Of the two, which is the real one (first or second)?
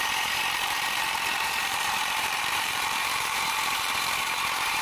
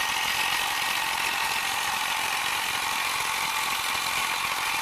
second